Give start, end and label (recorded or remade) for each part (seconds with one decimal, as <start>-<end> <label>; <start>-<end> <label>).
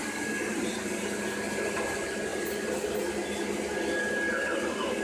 0.0-5.0 recorded